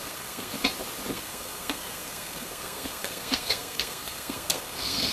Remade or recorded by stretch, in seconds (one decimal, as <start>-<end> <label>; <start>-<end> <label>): 0.0-0.5 remade; 0.5-1.1 recorded; 1.1-5.1 remade